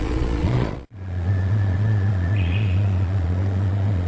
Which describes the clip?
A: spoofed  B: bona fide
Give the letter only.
A